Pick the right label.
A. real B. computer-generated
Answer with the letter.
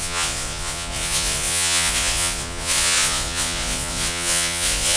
B